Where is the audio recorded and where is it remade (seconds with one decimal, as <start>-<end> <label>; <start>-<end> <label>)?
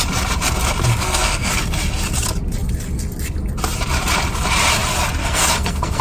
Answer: 0.0-0.9 recorded; 0.9-1.5 remade; 1.5-5.2 recorded; 5.2-6.0 remade